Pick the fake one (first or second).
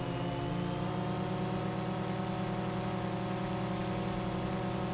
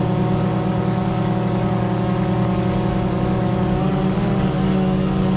second